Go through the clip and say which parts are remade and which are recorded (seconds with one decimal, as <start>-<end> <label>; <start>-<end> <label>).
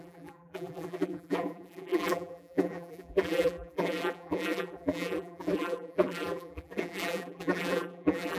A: 0.0-8.4 remade